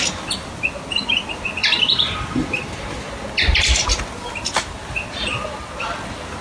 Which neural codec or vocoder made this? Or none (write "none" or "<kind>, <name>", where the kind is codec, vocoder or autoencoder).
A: none